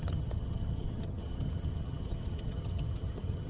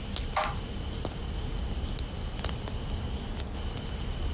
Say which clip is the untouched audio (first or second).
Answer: second